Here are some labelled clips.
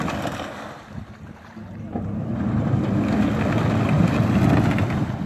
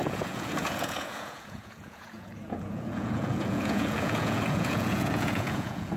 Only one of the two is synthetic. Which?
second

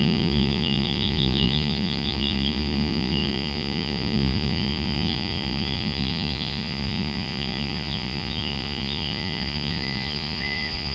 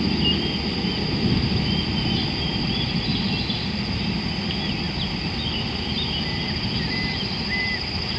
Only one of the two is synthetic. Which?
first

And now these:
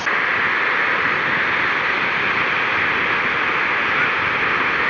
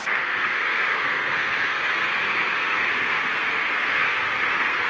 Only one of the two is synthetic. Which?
second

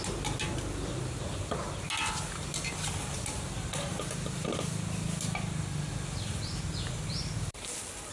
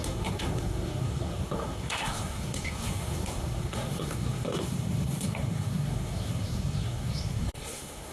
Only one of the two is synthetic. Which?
second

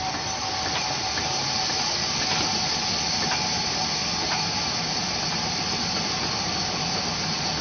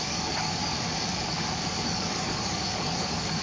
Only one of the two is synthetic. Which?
second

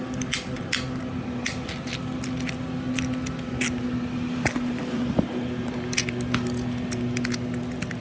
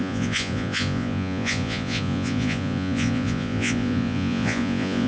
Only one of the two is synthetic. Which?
second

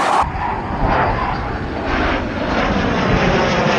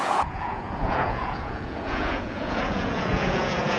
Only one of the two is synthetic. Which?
second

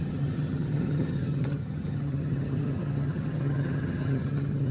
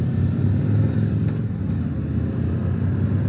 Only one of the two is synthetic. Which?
first